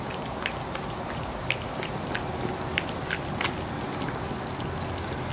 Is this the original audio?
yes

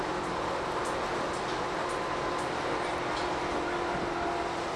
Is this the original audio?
yes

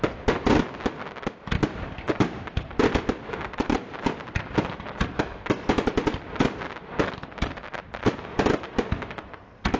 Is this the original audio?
yes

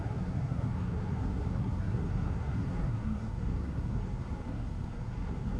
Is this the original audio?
no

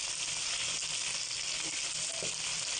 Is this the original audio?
yes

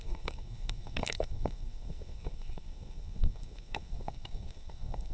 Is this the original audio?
no